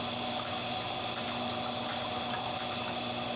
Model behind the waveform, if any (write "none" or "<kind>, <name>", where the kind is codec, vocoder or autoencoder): none